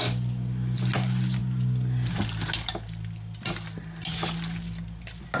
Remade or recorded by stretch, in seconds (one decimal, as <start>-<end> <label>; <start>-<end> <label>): 0.0-5.4 recorded